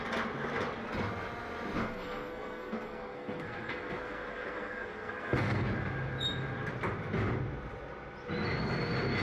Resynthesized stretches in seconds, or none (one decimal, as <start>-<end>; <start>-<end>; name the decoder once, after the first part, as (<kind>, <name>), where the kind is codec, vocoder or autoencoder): 1.8-5.7 (codec, SNAC)